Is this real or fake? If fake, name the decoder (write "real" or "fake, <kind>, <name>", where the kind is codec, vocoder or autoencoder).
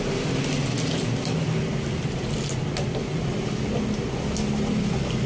real